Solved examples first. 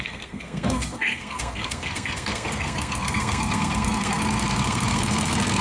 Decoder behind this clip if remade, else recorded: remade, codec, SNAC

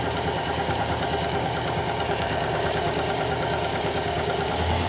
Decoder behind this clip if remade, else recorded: remade, codec, DAC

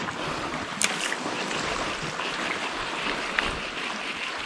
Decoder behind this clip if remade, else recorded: remade, vocoder, BigVGAN v2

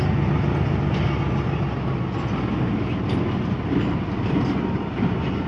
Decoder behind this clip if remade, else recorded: recorded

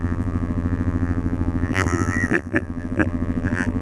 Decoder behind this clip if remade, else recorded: remade, vocoder, BigVGAN v2